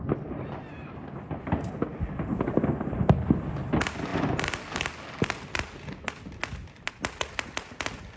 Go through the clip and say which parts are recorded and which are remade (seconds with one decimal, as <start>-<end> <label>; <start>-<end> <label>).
0.0-8.2 recorded